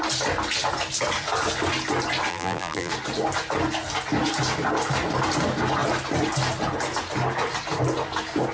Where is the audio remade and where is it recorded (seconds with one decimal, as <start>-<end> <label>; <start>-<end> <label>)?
0.0-2.3 recorded; 2.3-2.9 remade; 2.9-8.5 recorded